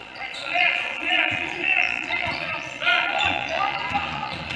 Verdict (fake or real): fake